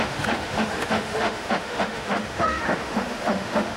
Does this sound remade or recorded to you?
remade